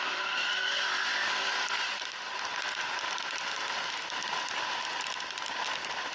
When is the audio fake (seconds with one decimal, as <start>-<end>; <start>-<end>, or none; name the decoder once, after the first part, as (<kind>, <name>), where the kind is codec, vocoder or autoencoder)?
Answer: none